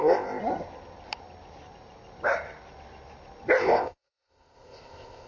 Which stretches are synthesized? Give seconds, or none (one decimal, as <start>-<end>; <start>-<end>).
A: 0.0-0.4; 3.6-5.3